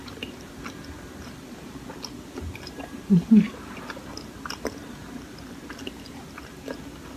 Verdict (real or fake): fake